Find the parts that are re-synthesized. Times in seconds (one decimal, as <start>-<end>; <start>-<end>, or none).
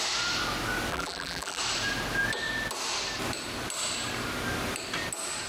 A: 0.9-1.6